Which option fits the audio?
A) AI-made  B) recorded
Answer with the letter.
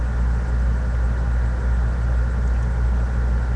B